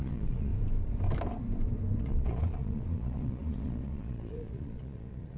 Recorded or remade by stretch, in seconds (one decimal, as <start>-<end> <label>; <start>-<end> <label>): 0.0-0.5 remade; 0.5-2.0 recorded; 2.0-5.4 remade